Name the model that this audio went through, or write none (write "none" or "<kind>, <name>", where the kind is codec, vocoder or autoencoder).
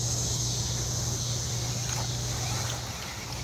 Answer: none